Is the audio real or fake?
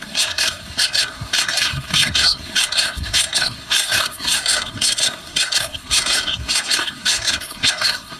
fake